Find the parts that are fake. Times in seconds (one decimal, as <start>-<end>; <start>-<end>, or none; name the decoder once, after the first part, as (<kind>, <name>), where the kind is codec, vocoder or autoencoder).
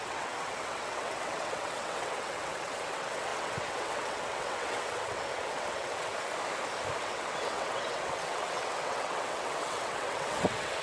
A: 0.0-6.1 (vocoder, WaveNeXt); 7.0-10.8